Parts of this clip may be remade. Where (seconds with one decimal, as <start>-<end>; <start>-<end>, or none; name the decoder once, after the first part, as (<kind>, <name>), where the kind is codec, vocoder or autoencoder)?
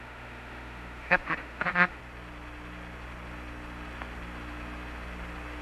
0.0-2.0 (autoencoder, DAC-VAE)